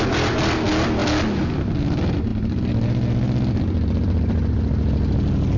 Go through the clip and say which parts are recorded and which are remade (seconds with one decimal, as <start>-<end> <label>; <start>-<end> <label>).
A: 0.0-5.6 recorded

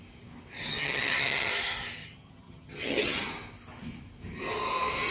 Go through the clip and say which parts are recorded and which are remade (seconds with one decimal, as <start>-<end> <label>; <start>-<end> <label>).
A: 0.0-0.7 recorded; 0.7-1.5 remade; 1.5-2.0 recorded; 2.0-3.3 remade; 3.3-5.1 recorded

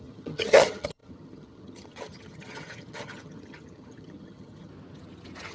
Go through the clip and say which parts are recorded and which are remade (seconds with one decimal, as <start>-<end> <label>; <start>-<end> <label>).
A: 0.0-4.7 remade; 4.7-5.5 recorded

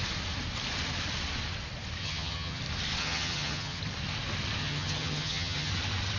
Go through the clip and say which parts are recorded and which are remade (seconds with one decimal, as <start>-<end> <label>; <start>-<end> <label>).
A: 0.0-2.0 recorded; 2.0-2.6 remade; 2.6-3.0 recorded; 3.0-3.8 remade; 3.8-4.6 recorded; 4.6-5.7 remade; 5.7-6.2 recorded

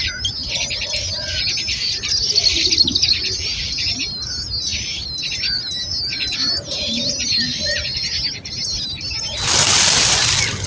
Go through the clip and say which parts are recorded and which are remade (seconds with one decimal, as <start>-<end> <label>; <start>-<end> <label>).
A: 0.0-10.7 recorded

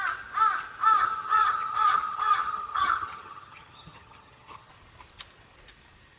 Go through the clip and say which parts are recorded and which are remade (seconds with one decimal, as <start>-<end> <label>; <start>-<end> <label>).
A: 0.0-1.0 recorded; 1.0-4.7 remade; 4.7-6.2 recorded

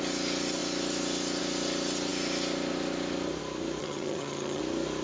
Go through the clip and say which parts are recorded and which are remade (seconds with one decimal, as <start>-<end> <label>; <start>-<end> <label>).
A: 0.0-3.8 recorded; 3.8-4.6 remade; 4.6-5.0 recorded

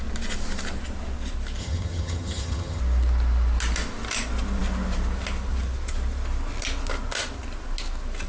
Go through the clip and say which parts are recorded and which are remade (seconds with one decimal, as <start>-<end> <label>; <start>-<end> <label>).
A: 0.0-1.6 recorded; 1.6-2.8 remade; 2.8-8.3 recorded